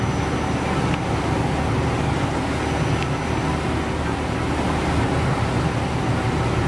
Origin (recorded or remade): recorded